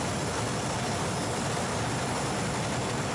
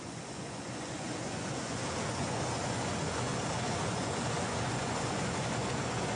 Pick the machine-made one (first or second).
second